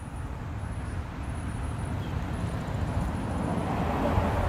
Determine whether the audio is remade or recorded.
recorded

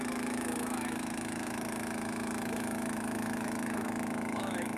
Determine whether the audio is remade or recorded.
remade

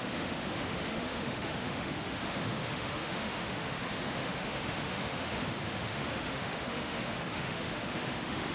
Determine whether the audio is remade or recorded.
remade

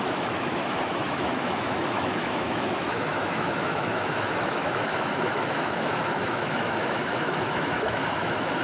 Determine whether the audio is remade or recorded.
remade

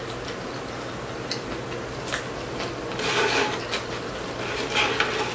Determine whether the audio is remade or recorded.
recorded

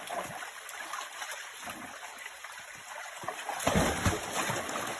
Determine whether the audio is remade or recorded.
recorded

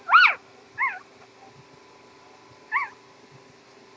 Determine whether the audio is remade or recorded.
recorded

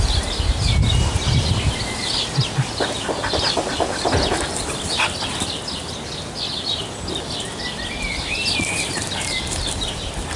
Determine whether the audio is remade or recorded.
recorded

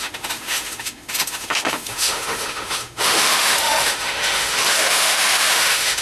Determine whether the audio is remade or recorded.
remade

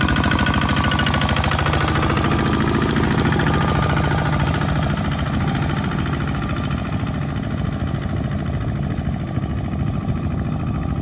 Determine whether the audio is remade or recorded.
recorded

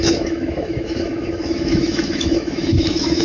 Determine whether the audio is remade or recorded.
remade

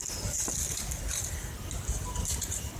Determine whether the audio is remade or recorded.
recorded